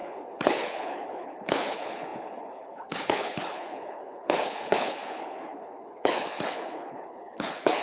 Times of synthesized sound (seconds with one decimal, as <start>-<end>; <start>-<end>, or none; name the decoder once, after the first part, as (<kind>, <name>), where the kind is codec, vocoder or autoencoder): 0.0-7.8 (codec, HILCodec)